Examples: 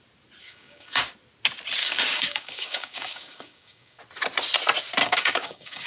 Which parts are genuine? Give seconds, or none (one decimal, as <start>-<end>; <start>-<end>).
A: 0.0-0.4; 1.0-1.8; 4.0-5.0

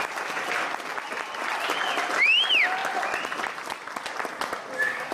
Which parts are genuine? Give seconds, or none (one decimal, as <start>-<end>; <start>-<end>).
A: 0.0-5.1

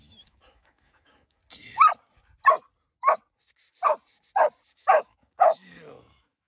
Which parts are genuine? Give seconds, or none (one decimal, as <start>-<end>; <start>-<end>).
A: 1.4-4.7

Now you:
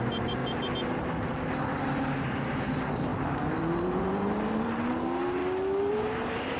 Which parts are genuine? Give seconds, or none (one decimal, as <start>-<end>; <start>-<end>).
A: 0.4-1.7; 5.4-5.9

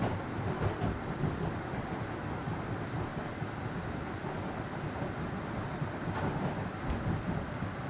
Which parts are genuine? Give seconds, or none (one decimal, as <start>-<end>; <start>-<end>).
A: 0.0-7.9

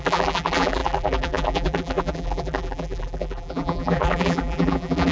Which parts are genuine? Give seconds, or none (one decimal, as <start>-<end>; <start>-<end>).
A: none

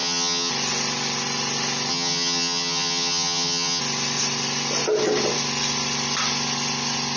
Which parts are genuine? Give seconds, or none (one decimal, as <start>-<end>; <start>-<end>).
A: 0.5-1.9; 3.8-7.2

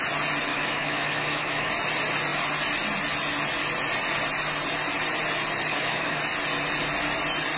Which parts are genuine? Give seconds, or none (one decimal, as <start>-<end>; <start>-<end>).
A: 0.0-0.5; 1.7-5.7; 6.2-7.6